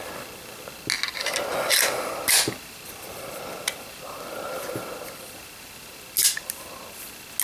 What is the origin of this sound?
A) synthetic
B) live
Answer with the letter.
B